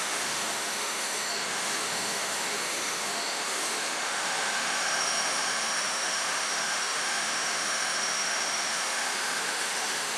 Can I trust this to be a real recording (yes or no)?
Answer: no